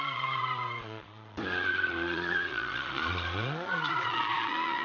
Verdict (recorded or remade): remade